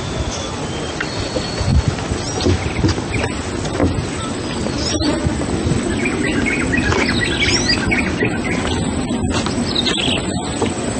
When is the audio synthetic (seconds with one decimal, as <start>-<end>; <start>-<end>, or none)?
none